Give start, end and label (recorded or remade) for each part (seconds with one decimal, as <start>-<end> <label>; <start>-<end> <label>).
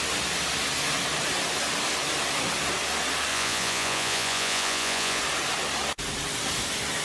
0.0-3.3 recorded; 3.3-5.2 remade; 5.2-7.0 recorded